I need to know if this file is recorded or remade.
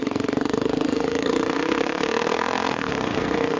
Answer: remade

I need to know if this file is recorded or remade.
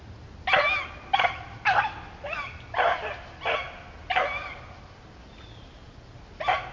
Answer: recorded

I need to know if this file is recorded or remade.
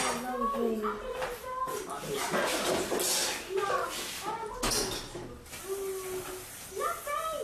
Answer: recorded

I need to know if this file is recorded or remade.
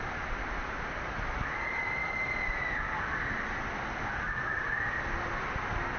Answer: recorded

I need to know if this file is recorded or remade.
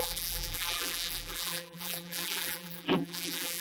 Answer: remade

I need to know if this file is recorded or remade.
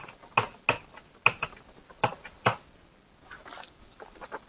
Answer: recorded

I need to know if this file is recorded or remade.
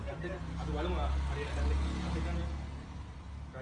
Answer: recorded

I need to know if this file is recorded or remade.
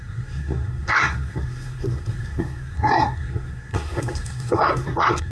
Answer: remade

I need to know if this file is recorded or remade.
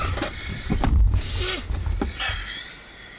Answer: recorded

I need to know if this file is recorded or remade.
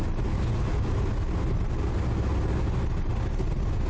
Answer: recorded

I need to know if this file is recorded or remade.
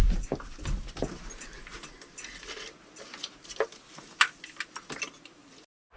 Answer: recorded